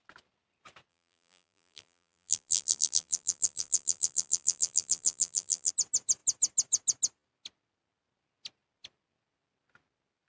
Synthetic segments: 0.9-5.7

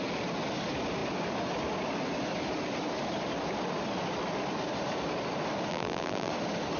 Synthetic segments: 5.7-6.3

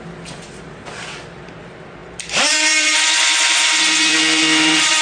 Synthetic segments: 0.0-5.0

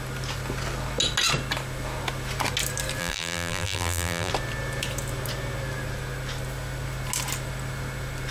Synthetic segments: 3.0-4.3

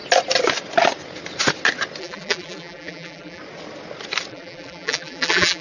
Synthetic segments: 2.0-3.4; 4.3-5.6

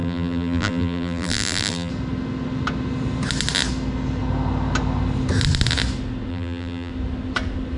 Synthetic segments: 0.0-1.9; 6.3-6.9

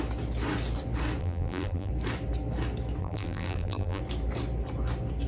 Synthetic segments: 1.2-1.9; 3.0-4.0

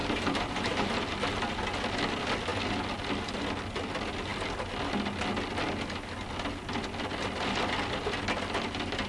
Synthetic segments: 0.0-0.8